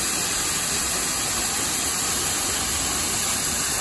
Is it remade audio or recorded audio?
recorded